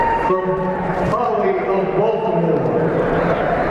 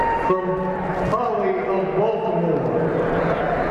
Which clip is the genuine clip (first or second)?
second